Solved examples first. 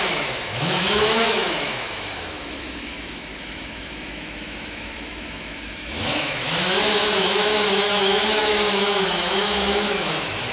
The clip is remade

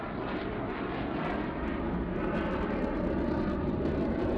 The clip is recorded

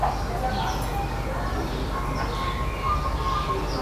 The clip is recorded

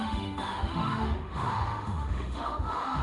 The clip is remade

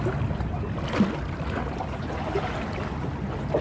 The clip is recorded